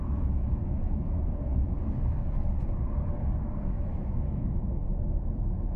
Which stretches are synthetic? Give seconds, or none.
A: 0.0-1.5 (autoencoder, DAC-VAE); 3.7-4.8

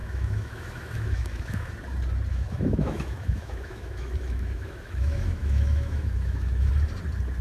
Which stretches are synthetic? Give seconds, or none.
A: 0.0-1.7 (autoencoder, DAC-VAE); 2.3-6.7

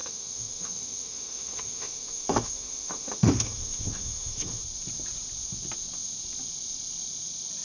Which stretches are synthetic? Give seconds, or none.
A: 0.0-4.6 (autoencoder, DAC-VAE)

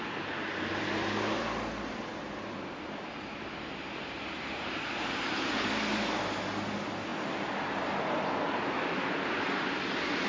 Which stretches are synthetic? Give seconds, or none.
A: none

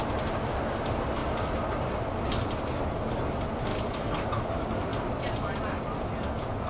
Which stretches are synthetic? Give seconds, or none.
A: 3.7-4.5 (autoencoder, DAC-VAE)